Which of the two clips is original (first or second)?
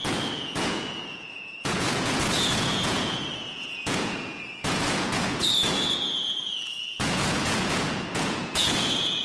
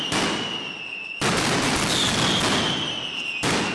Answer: second